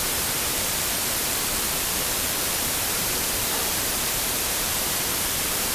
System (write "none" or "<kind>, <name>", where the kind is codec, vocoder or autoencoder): vocoder, BigVGAN v2